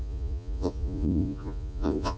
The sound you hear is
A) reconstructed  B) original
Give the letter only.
A